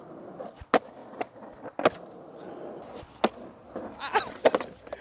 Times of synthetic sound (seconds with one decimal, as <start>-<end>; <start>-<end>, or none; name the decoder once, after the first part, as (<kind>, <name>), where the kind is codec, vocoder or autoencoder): none